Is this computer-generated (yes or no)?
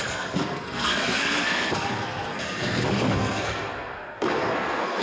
yes